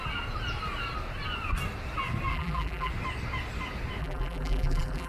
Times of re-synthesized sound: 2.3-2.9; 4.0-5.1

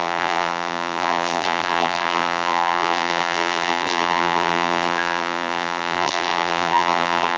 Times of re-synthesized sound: 0.0-7.4

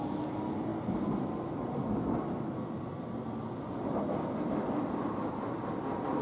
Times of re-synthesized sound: none

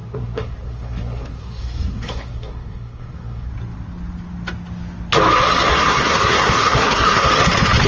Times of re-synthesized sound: 0.0-3.5; 5.7-7.3

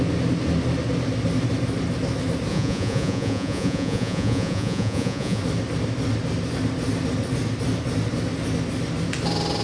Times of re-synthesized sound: 2.5-5.4

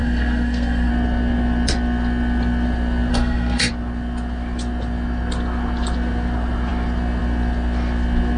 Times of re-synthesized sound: 0.0-0.9; 3.1-3.7